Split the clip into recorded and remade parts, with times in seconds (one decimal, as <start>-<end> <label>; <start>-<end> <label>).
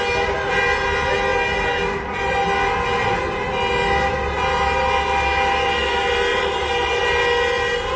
0.0-6.3 recorded; 6.3-7.0 remade; 7.0-8.0 recorded